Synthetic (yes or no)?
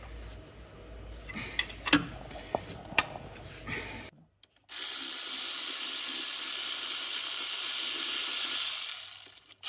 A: no